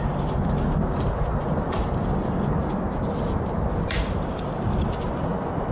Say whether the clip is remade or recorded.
recorded